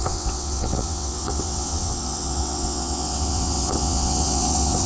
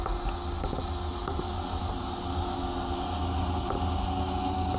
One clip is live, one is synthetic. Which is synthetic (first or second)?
first